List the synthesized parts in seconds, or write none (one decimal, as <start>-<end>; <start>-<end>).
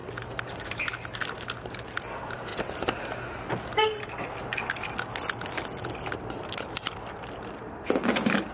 none